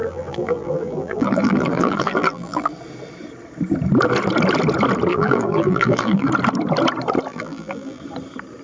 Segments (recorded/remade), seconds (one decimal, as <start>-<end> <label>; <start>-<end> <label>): 0.0-2.7 remade; 2.7-5.1 recorded; 5.1-6.3 remade; 6.3-7.3 recorded; 7.3-8.0 remade; 8.0-8.6 recorded